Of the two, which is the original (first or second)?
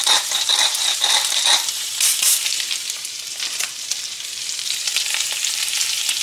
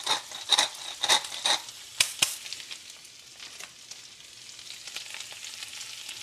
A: second